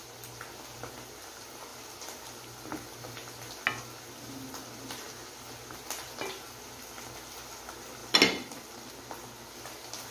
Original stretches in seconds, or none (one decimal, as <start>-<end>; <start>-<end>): 0.0-10.1